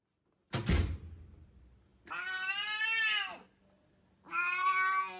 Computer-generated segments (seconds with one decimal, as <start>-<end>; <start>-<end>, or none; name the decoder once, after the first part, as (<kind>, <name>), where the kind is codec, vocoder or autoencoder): none